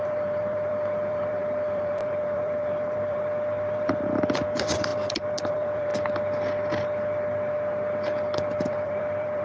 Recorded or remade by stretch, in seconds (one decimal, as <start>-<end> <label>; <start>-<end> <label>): 0.0-4.9 remade; 4.9-5.5 recorded; 5.5-5.9 remade; 5.9-8.5 recorded; 8.5-9.4 remade